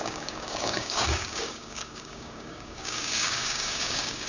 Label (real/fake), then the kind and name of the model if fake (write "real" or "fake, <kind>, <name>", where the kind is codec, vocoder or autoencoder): fake, codec, DAC